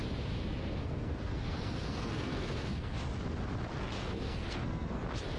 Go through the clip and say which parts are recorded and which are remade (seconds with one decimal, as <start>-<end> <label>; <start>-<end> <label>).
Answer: 0.0-0.8 recorded; 0.8-3.0 remade; 3.0-3.7 recorded; 3.7-5.0 remade; 5.0-5.4 recorded